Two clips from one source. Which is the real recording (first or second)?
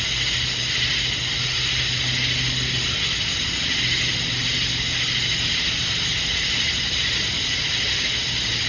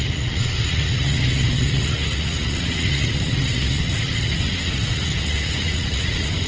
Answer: first